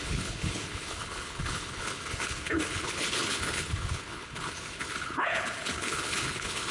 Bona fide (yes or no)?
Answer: no